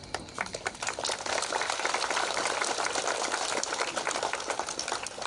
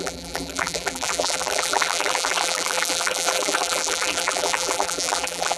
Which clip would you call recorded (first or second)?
first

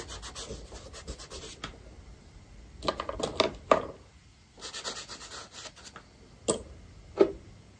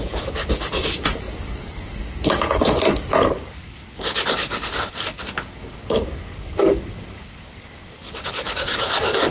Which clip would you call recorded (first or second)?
first